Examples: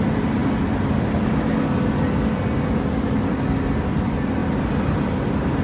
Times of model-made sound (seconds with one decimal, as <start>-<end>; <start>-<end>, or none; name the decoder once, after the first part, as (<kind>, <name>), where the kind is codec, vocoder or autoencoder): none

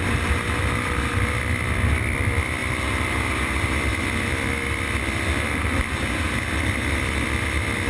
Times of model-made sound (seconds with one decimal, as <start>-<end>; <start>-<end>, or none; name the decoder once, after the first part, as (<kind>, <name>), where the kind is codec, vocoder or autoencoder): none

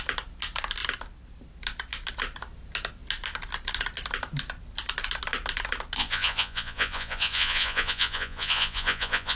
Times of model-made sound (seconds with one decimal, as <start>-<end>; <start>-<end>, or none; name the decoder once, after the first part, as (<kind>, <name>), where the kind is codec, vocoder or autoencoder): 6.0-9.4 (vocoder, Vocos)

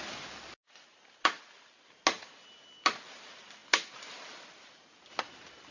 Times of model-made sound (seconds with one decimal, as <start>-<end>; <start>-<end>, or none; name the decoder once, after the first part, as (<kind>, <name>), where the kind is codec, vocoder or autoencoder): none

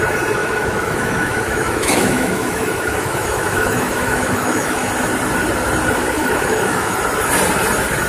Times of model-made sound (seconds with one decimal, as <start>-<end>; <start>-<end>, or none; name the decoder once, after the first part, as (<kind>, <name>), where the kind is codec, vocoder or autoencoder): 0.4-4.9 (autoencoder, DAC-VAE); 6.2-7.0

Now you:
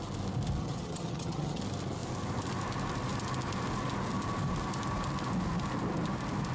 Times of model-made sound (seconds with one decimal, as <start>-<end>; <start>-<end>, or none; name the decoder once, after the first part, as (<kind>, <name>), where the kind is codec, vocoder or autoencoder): 0.6-1.6 (vocoder, HiFi-GAN)